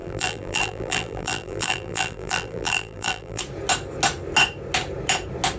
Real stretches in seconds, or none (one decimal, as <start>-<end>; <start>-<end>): 3.4-5.6